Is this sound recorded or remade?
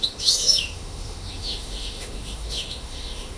remade